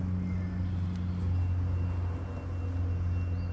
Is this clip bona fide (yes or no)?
yes